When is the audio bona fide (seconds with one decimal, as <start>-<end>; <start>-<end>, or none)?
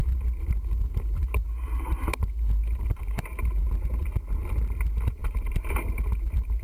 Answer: none